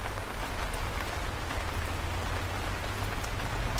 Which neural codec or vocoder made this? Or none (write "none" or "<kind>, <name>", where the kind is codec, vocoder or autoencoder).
none